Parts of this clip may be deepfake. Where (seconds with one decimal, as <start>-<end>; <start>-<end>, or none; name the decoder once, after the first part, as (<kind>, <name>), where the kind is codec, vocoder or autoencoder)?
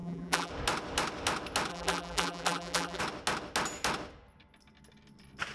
0.0-0.5 (vocoder, BigVGAN v2); 1.7-3.0